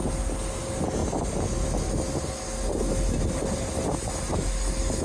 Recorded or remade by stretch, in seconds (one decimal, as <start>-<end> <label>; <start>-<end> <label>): 0.0-5.0 recorded